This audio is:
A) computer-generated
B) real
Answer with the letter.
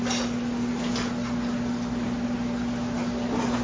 B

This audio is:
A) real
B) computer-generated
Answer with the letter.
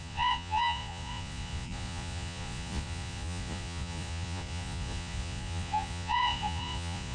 B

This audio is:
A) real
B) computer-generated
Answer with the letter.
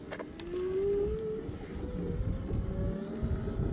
A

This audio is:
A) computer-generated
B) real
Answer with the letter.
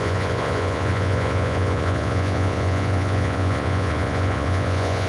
A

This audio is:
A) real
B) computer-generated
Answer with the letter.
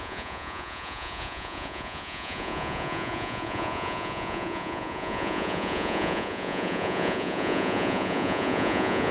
B